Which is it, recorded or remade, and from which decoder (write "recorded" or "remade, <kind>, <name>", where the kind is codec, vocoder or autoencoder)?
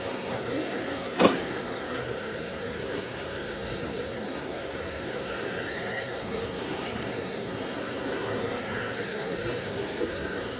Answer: remade, codec, SNAC